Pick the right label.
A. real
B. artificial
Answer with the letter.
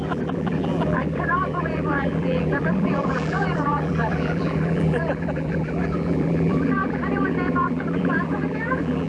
B